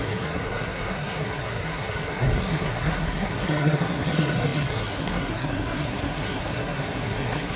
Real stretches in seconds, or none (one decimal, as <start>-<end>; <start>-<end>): none

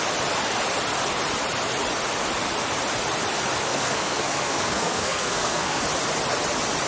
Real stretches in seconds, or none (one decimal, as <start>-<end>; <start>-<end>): 0.0-3.6; 5.8-6.9

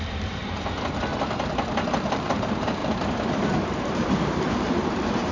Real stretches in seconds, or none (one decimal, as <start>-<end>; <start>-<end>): 0.4-1.9; 2.8-3.3

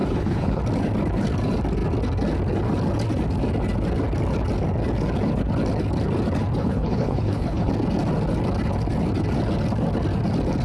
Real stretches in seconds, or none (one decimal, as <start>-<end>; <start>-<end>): 0.6-6.6; 7.7-10.6

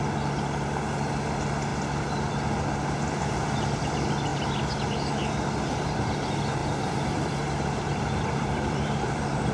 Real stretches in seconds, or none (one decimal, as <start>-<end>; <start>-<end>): 0.0-6.6

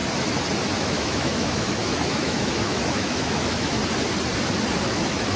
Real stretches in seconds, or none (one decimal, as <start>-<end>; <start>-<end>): 0.0-0.8; 3.8-4.8

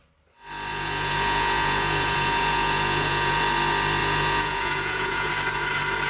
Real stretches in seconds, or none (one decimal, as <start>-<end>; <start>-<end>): 0.0-0.7; 3.4-4.0; 5.3-6.1

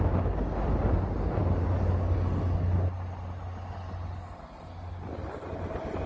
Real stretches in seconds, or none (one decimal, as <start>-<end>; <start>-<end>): 0.0-6.1